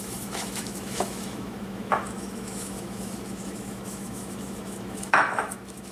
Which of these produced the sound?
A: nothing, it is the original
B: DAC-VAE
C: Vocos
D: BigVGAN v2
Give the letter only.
B